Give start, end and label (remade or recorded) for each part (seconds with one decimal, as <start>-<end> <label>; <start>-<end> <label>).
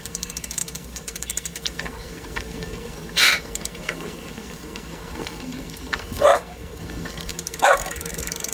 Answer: 0.0-8.5 remade